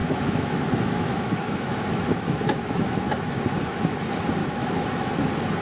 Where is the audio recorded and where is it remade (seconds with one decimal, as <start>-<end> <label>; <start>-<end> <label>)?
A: 0.0-3.4 remade; 3.4-4.4 recorded; 4.4-5.1 remade; 5.1-5.6 recorded